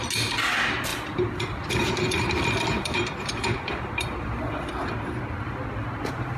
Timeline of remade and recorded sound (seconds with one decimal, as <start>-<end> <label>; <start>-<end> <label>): 0.0-0.9 recorded; 0.9-4.7 remade; 4.7-6.4 recorded